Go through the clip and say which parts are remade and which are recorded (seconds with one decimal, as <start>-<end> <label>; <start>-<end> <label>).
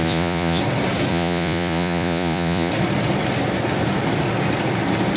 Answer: 0.0-0.6 remade; 0.6-1.1 recorded; 1.1-2.7 remade; 2.7-5.2 recorded